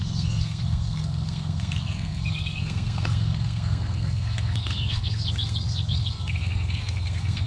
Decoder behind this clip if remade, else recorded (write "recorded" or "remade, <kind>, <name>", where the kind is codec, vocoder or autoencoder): remade, codec, SNAC